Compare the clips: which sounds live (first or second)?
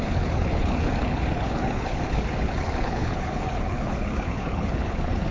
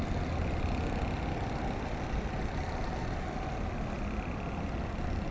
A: second